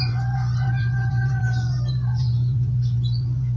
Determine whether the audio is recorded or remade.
remade